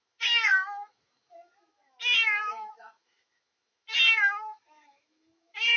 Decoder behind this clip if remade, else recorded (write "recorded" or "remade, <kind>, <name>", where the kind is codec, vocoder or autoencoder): remade, autoencoder, DAC-VAE